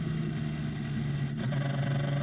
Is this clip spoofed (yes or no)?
no